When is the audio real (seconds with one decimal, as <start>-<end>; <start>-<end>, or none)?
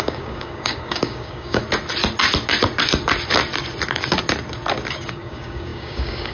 1.6-5.1